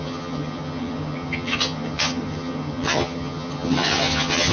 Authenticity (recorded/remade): remade